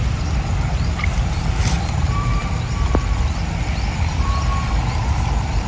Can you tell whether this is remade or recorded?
remade